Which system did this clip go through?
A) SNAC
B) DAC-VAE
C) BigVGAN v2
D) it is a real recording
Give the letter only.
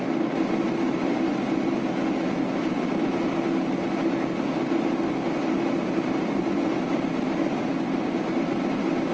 D